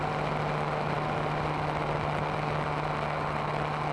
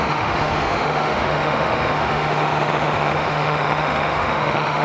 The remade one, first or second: second